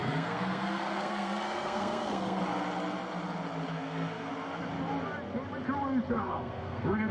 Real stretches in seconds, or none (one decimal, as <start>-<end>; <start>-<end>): 2.4-3.7; 4.3-6.1